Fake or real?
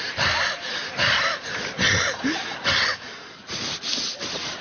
real